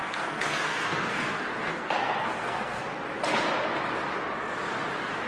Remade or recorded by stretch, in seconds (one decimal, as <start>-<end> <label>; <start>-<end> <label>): 0.0-2.8 remade; 2.8-5.3 recorded